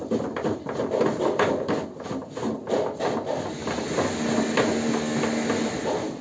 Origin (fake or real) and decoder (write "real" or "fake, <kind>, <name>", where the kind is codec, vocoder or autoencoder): real